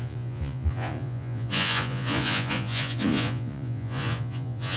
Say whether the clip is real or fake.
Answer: fake